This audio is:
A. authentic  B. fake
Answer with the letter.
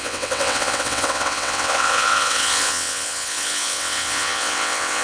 B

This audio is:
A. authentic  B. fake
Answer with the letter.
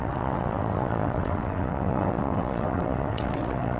B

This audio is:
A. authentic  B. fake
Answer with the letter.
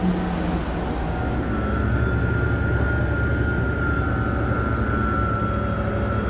A